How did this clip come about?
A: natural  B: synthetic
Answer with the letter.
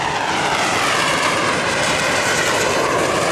B